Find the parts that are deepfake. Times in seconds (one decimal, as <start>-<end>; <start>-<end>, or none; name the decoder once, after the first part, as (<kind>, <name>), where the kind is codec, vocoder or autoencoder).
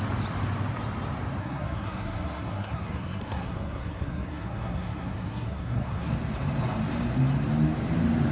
1.4-6.1 (codec, SNAC)